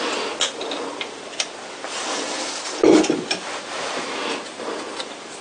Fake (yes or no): no